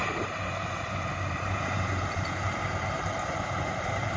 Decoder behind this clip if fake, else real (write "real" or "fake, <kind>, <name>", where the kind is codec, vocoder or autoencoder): fake, vocoder, BigVGAN v2